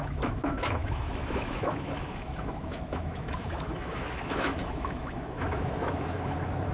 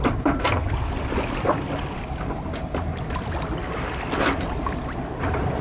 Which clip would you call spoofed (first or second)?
first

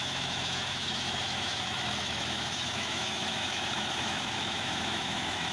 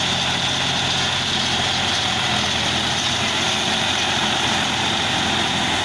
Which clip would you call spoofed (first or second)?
first